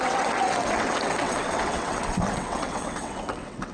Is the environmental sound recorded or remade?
remade